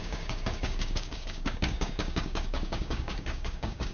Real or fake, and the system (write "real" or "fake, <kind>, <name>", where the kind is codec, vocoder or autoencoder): fake, codec, DAC